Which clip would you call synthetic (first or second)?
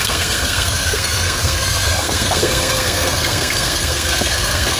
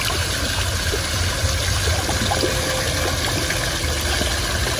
first